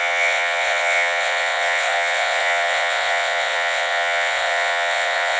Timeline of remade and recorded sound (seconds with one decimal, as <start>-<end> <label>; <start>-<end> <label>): 0.0-5.4 remade